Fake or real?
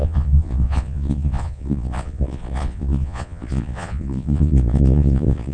fake